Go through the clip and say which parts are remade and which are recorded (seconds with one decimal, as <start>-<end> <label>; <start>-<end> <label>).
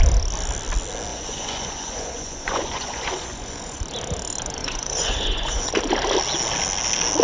0.0-1.1 recorded; 1.1-3.8 remade; 3.8-4.6 recorded; 4.6-5.7 remade; 5.7-7.2 recorded